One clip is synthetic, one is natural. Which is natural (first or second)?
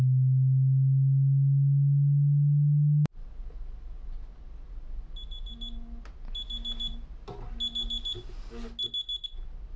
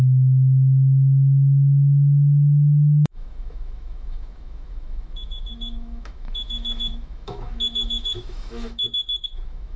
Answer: first